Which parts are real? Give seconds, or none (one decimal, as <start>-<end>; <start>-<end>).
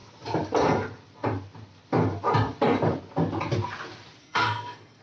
0.0-4.2